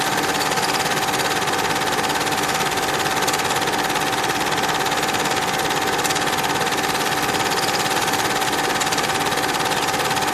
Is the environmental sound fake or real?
real